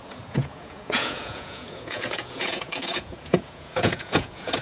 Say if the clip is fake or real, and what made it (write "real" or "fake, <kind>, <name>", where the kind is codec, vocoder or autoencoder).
fake, vocoder, Vocos